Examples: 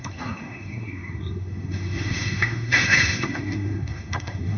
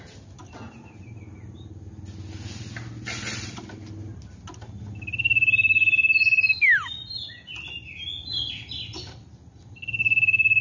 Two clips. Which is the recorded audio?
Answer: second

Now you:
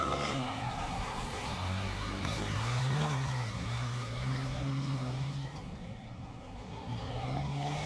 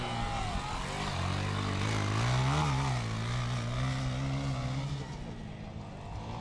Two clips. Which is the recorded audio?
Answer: second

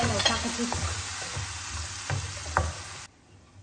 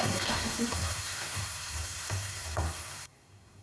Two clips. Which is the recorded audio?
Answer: first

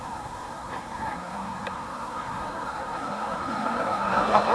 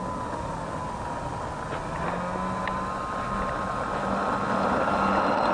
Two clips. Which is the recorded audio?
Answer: second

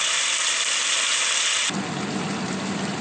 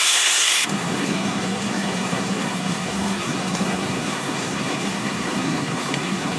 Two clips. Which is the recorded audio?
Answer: first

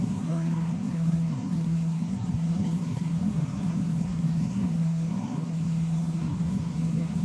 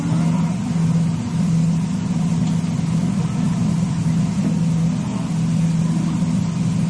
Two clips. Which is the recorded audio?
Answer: second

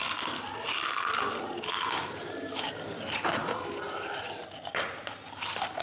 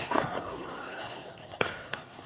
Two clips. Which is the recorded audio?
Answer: first